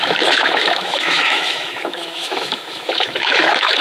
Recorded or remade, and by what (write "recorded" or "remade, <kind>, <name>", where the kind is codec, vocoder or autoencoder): remade, autoencoder, DAC-VAE